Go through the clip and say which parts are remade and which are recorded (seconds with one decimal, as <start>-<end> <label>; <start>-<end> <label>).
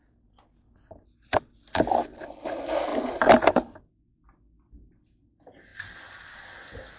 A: 0.0-5.7 recorded; 5.7-6.3 remade; 6.3-7.0 recorded